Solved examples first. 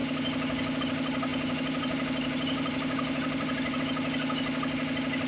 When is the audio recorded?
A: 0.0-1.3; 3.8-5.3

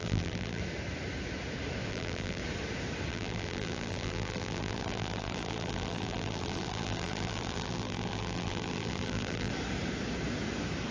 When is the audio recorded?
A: 0.6-1.9; 2.4-3.1; 9.5-10.9

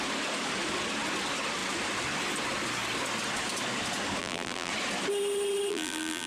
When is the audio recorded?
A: 0.0-4.2; 4.7-5.7